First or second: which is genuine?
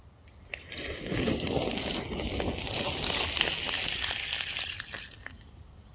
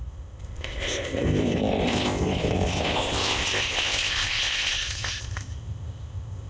first